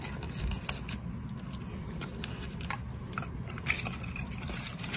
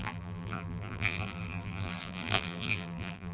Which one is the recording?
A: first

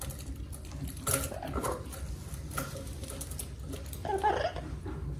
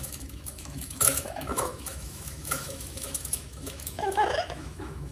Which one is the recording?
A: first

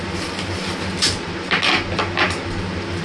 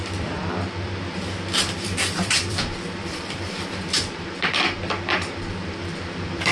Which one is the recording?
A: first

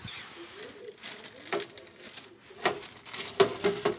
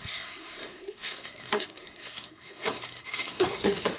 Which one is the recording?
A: first